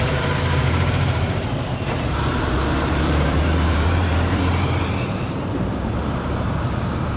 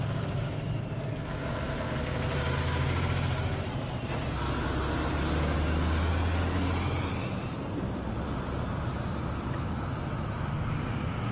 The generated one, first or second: first